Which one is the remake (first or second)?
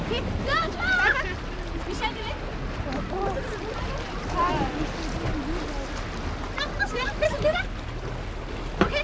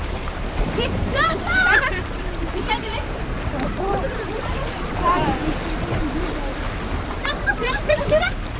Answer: second